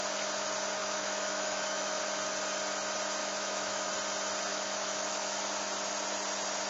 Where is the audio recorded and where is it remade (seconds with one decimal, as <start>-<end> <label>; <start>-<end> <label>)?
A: 0.0-0.8 recorded; 0.8-2.0 remade; 2.0-3.2 recorded; 3.2-3.9 remade; 3.9-4.5 recorded; 4.5-5.4 remade; 5.4-6.7 recorded